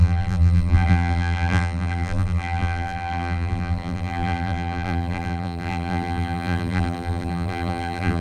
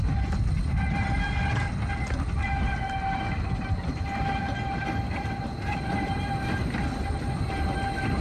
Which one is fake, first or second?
first